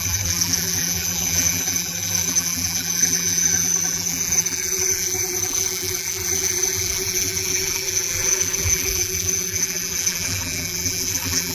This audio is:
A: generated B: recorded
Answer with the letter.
A